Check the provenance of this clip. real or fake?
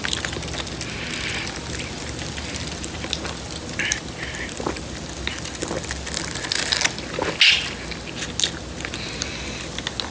real